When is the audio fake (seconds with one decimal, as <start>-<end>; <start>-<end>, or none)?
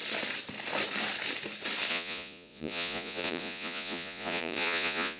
1.9-5.2